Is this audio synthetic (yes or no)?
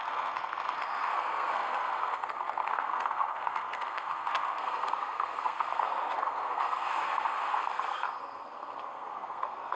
yes